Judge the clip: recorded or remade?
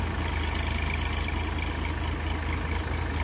recorded